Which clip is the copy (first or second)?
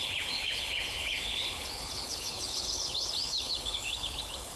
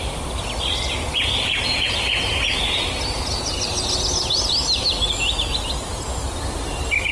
first